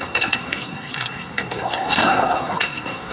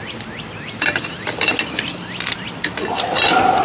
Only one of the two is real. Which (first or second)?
second